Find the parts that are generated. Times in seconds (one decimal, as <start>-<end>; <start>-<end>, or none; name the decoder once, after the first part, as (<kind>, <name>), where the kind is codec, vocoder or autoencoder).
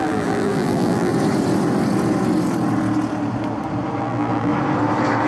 0.0-1.1 (vocoder, BigVGAN v2); 4.0-4.5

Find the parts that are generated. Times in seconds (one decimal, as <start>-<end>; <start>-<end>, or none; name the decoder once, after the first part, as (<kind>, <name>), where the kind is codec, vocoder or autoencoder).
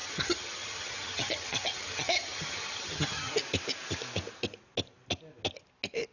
0.0-3.3 (vocoder, HiFi-GAN)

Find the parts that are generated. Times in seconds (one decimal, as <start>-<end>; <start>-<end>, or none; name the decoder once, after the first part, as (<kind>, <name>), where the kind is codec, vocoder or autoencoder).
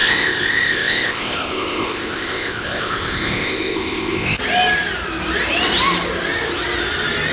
0.0-4.4 (codec, ZipCodec)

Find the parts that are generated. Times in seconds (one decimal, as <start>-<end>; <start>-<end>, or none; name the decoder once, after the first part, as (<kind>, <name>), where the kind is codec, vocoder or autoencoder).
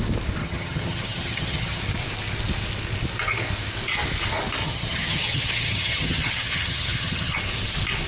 0.4-1.8 (vocoder, HiFi-GAN); 4.6-7.4